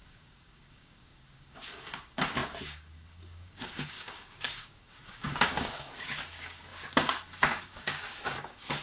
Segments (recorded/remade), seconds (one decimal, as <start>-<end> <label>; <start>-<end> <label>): 0.0-8.8 remade